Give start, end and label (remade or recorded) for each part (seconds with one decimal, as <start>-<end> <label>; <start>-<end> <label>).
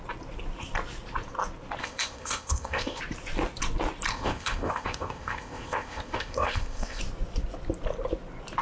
0.0-1.8 recorded; 1.8-3.0 remade; 3.0-4.1 recorded; 4.1-7.0 remade; 7.0-8.6 recorded